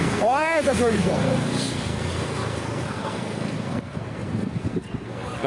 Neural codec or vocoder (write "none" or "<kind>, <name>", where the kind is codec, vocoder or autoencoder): codec, SNAC